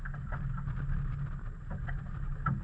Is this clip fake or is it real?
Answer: real